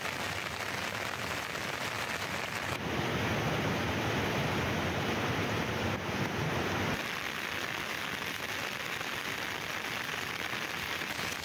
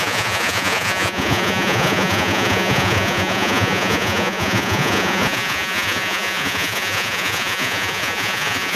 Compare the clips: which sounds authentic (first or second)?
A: first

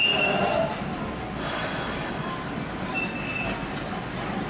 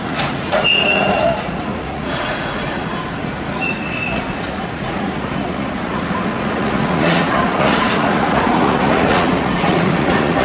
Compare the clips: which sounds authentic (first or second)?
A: first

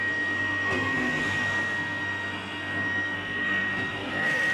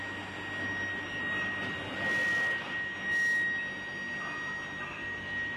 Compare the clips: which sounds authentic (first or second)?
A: second